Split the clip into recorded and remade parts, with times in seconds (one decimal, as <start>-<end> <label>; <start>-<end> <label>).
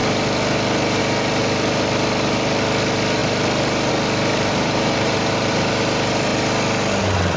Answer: 0.0-4.5 recorded; 4.5-5.7 remade; 5.7-7.4 recorded